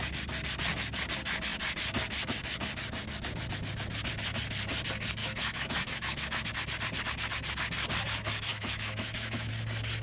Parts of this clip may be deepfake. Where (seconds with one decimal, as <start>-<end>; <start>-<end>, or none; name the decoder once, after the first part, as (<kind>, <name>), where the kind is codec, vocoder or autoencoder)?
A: 5.2-6.5 (autoencoder, DAC-VAE); 8.5-9.5